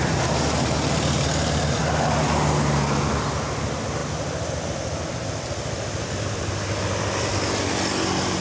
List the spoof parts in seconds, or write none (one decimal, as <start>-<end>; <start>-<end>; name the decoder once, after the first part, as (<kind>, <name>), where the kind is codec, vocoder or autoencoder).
none